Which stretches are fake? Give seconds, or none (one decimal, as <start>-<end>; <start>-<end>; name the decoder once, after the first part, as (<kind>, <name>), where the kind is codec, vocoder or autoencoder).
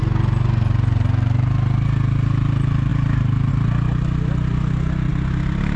none